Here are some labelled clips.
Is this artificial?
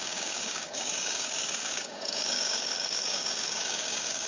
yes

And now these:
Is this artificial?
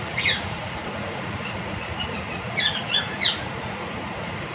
yes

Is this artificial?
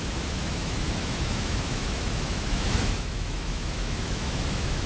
yes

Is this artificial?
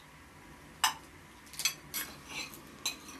no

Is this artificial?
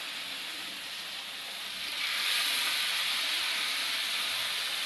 no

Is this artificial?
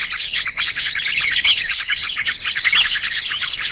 yes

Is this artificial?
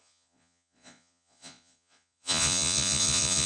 yes